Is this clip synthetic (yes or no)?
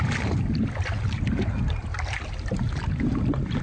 no